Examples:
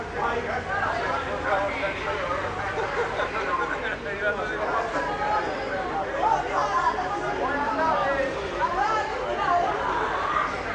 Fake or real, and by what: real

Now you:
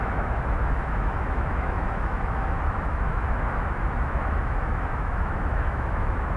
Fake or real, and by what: fake, autoencoder, DAC-VAE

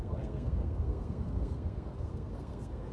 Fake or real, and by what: fake, codec, SNAC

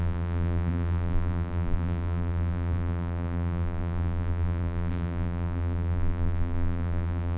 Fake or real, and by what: fake, vocoder, BigVGAN v2